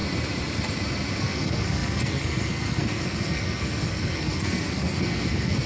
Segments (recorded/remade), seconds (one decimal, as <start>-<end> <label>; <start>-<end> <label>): 0.0-1.2 recorded; 1.2-5.7 remade